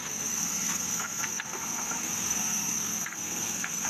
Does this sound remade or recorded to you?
remade